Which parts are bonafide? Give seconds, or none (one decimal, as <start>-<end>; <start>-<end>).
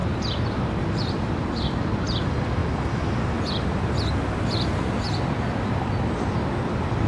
1.9-7.1